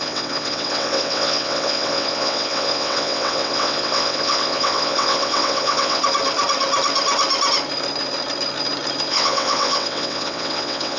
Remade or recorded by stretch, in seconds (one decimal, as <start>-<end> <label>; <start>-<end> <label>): 0.0-6.0 remade; 6.0-9.1 recorded; 9.1-11.0 remade